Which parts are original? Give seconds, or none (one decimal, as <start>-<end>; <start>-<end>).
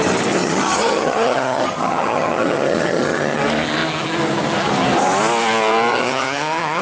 0.0-0.4; 3.4-5.9